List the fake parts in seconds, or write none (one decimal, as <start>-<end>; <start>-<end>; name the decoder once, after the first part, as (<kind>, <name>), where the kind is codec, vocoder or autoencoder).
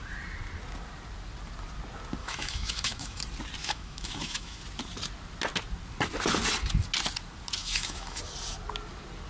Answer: 2.2-3.2 (autoencoder, DAC-VAE); 3.6-4.6; 7.6-8.2